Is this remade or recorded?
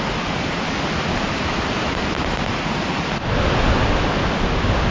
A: recorded